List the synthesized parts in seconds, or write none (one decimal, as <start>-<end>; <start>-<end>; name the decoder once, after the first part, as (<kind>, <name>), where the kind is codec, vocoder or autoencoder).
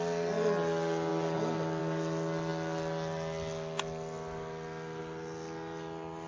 none